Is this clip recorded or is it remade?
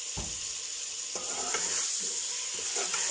recorded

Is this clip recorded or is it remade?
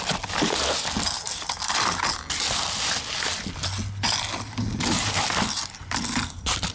recorded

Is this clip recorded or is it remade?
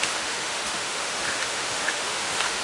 remade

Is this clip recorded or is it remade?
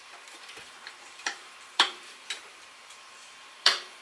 remade